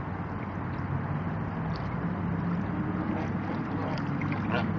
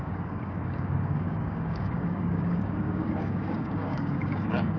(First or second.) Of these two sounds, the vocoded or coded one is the second